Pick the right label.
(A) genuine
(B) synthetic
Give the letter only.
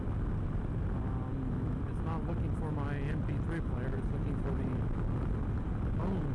A